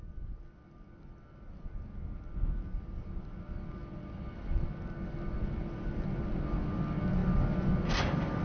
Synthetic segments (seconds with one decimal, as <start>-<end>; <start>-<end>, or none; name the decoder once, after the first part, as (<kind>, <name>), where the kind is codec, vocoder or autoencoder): none